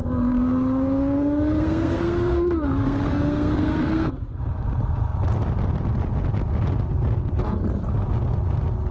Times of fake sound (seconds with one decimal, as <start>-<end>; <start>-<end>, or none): 0.0-4.1

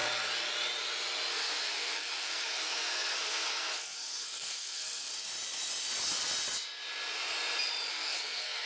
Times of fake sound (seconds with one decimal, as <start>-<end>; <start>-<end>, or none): 1.3-5.1; 7.9-8.7

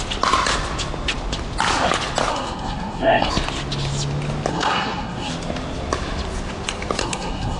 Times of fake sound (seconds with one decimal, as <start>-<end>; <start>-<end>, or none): 2.3-3.3; 4.5-5.3; 7.0-7.6

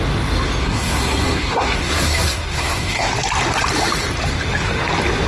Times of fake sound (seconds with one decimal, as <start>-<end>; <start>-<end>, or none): 0.6-3.1

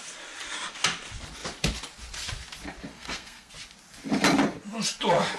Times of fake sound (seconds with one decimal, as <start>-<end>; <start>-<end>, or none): 2.9-3.5